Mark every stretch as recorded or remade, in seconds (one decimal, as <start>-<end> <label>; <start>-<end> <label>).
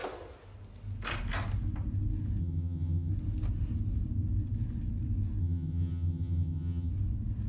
0.0-2.4 recorded; 2.4-3.1 remade; 3.1-5.4 recorded; 5.4-6.9 remade; 6.9-7.5 recorded